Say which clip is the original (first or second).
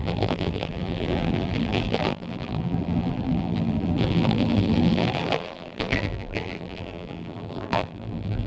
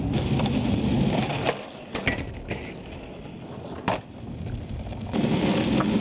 second